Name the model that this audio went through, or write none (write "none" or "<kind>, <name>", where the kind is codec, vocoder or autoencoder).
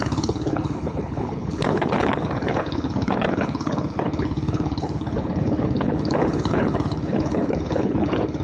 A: codec, HILCodec